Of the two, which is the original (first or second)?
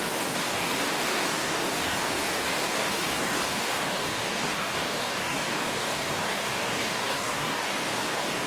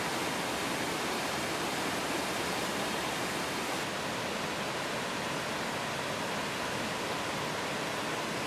second